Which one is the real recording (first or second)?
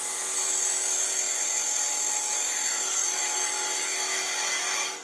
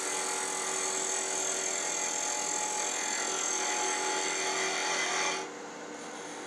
second